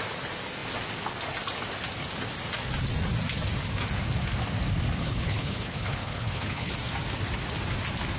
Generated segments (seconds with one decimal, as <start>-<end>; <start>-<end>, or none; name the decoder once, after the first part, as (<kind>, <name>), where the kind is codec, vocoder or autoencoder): 5.0-6.7 (codec, HILCodec)